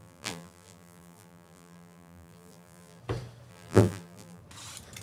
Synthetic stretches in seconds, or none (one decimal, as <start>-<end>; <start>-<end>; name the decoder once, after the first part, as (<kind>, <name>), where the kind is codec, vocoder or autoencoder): 0.0-3.0 (vocoder, BigVGAN v2); 3.5-4.4